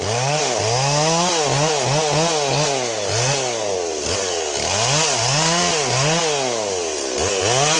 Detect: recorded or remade recorded